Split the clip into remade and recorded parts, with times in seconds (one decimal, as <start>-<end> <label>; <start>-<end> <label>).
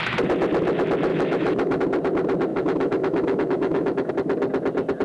0.0-1.1 recorded; 1.1-1.8 remade; 1.8-2.5 recorded; 2.5-4.1 remade; 4.1-5.0 recorded